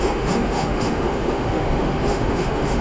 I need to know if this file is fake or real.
fake